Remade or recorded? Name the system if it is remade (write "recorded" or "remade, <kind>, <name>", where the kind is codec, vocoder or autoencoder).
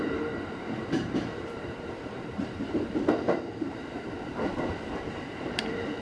remade, vocoder, BigVGAN v2